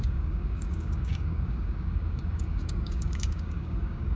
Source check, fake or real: fake